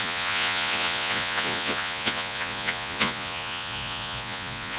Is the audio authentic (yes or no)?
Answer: no